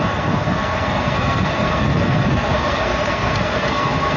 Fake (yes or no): yes